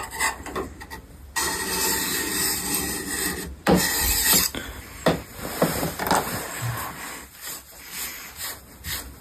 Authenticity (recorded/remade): recorded